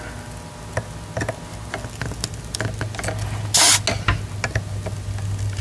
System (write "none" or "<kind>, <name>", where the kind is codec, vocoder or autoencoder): none